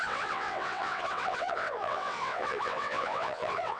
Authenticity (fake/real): fake